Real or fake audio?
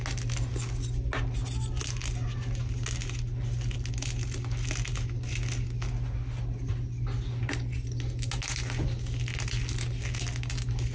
real